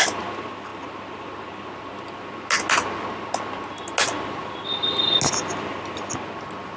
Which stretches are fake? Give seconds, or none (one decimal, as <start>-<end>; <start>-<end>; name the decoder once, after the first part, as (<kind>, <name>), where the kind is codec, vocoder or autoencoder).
none